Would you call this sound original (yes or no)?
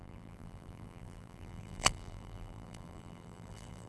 no